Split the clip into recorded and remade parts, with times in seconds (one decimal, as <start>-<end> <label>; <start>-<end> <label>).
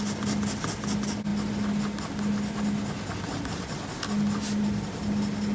0.0-5.5 recorded